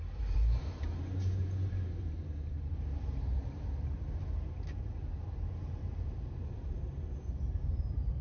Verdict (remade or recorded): remade